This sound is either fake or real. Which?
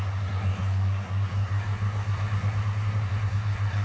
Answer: fake